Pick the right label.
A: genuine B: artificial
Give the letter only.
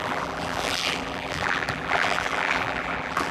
B